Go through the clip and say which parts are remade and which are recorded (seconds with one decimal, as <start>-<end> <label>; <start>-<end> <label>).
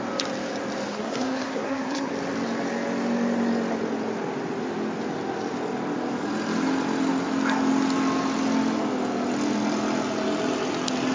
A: 0.0-0.9 recorded; 0.9-2.1 remade; 2.1-11.1 recorded